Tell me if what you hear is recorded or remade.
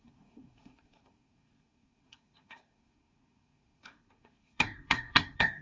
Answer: remade